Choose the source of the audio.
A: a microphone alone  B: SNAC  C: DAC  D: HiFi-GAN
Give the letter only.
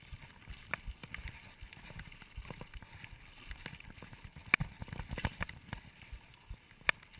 A